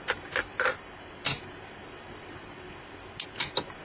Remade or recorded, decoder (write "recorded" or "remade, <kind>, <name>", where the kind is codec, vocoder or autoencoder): recorded